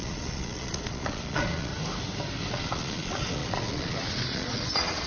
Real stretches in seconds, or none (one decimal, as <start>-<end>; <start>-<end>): 1.7-2.5

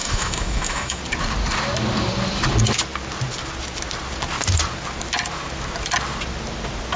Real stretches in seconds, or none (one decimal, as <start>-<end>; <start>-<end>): 1.0-7.0

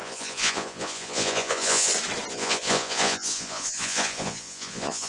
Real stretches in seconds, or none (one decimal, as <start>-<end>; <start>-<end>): 1.9-2.3

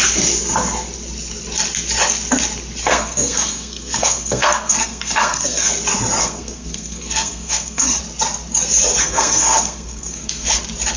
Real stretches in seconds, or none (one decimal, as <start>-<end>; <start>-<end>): 0.0-2.8; 5.7-6.2; 8.0-9.0; 10.6-11.0

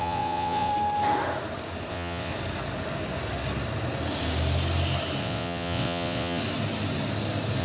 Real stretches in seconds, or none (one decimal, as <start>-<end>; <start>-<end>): 0.7-1.9; 2.3-5.2; 6.4-7.6

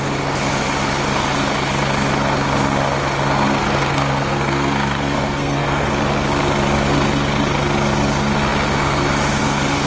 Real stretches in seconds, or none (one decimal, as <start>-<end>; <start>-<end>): 0.0-3.6; 5.9-9.9

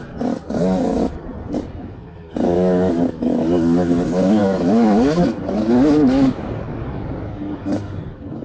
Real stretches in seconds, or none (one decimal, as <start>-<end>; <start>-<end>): 1.3-1.8

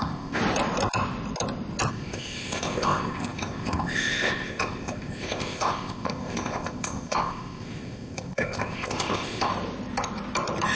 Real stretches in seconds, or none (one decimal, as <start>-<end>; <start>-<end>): 0.4-1.9; 9.5-10.8